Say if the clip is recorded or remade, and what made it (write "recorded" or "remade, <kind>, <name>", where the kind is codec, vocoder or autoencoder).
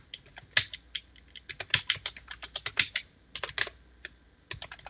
recorded